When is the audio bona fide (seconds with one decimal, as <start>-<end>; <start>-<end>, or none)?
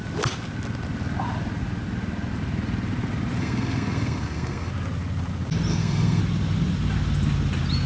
0.0-3.4; 4.7-5.7; 6.2-7.9